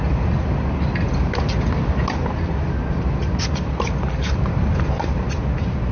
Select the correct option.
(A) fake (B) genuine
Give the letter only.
B